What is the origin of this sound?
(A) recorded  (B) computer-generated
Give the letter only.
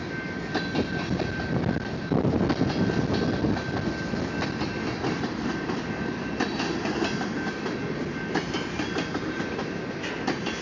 A